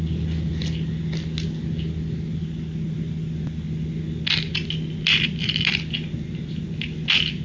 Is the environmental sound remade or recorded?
recorded